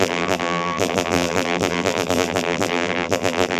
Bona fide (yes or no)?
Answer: no